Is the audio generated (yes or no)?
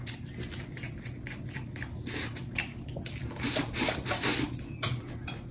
no